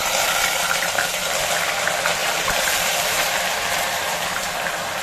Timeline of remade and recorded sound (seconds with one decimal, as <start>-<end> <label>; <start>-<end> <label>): 0.0-1.1 remade; 1.1-2.2 recorded; 2.2-3.4 remade; 3.4-5.0 recorded